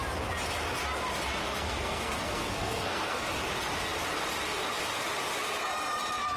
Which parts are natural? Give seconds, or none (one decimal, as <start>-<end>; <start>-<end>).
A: 0.0-1.4; 3.2-6.4